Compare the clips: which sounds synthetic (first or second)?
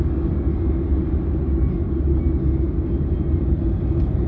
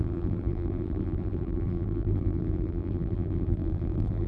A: second